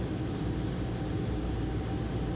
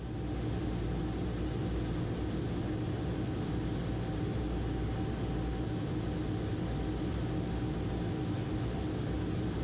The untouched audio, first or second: second